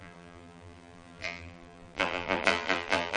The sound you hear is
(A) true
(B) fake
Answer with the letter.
B